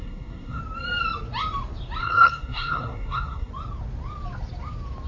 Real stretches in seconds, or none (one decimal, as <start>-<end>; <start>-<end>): 0.6-2.0; 3.5-5.1